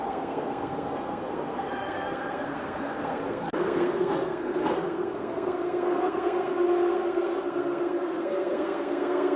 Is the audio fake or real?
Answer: fake